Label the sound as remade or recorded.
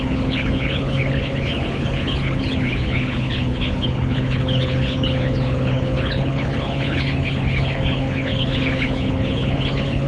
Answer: remade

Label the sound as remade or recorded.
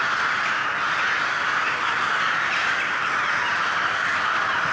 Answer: recorded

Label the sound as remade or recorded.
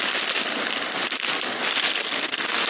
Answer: recorded